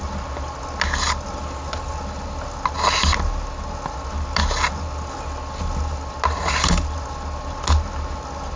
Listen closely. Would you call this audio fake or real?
real